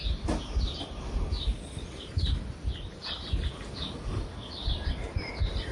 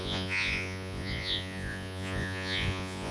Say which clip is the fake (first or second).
second